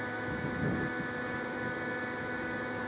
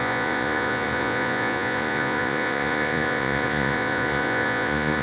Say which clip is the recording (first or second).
first